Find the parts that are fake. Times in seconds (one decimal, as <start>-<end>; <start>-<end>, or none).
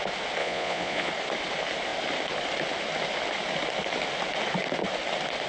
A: 0.4-1.1